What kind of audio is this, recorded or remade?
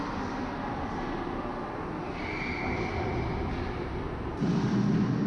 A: recorded